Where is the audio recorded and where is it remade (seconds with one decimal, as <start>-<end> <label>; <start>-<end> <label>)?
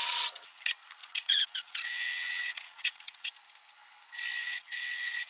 0.0-0.6 remade; 0.6-1.0 recorded; 1.0-3.3 remade; 3.3-4.4 recorded; 4.4-5.3 remade